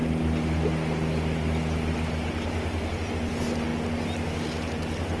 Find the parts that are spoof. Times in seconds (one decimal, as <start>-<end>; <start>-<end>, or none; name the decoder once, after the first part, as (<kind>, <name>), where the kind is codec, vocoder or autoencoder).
none